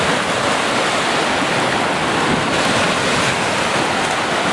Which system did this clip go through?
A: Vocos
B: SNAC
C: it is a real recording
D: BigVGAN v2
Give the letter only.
C